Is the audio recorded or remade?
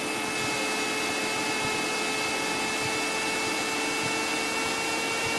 recorded